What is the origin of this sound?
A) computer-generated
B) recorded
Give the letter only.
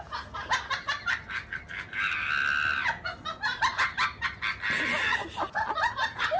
B